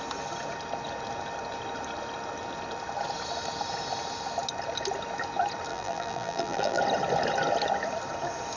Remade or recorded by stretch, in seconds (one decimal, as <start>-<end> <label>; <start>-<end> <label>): 0.0-5.7 recorded; 5.7-6.8 remade; 6.8-8.6 recorded